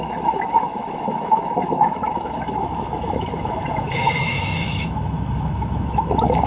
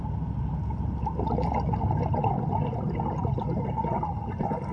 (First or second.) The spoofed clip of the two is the first